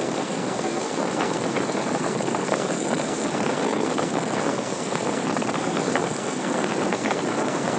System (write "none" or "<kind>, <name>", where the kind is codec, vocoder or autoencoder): codec, SNAC